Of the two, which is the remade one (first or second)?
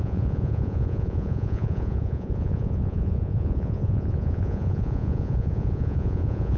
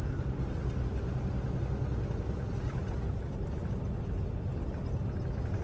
first